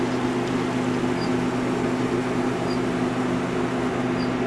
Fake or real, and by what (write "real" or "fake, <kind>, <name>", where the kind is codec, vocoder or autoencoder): real